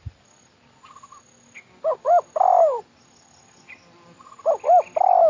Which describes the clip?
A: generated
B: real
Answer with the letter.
B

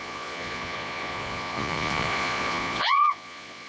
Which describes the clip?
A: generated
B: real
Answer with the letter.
A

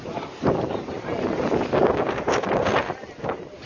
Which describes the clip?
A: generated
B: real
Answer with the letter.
B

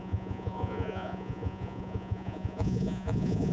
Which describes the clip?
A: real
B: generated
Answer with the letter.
B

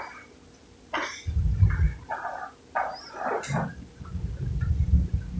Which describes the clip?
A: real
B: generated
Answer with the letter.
A